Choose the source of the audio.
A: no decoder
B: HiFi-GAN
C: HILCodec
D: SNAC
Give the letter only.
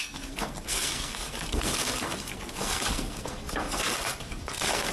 D